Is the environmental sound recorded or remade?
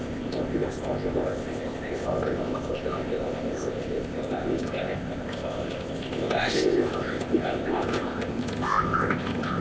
remade